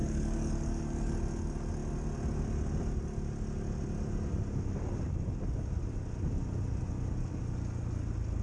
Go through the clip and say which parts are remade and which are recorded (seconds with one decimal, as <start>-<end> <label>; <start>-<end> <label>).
0.0-1.1 remade; 1.1-8.4 recorded